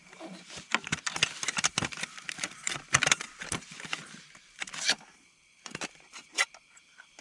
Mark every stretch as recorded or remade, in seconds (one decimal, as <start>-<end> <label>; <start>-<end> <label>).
0.0-4.3 remade; 4.3-7.2 recorded